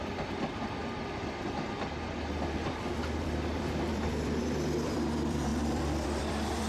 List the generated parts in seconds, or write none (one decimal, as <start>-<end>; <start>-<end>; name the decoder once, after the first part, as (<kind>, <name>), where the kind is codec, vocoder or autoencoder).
0.0-0.8 (vocoder, BigVGAN v2); 3.2-6.7